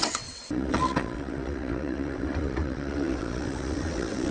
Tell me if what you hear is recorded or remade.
remade